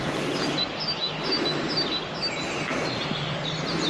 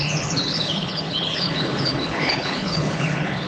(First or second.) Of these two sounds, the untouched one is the first